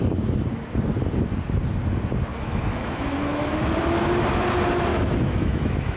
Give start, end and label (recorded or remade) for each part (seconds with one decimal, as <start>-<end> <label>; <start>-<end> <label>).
0.0-2.3 recorded; 2.3-3.7 remade; 3.7-4.9 recorded; 4.9-6.0 remade